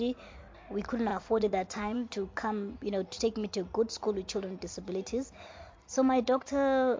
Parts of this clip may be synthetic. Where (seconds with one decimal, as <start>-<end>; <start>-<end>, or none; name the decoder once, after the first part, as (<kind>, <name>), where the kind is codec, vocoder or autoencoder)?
1.1-2.1 (vocoder, Vocos); 5.6-6.5